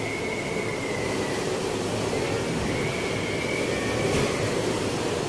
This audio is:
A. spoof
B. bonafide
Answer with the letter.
B